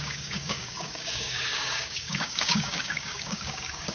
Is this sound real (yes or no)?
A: no